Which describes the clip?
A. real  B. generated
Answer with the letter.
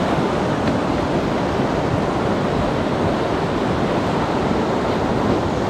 A